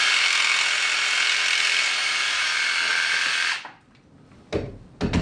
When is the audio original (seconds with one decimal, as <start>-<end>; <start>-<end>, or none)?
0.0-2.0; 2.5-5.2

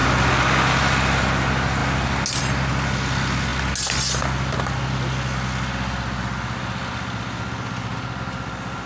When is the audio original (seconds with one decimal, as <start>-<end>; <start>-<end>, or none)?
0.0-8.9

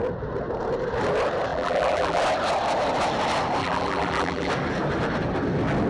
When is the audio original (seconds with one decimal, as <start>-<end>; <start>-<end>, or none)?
0.0-1.5; 2.2-3.6; 4.5-5.9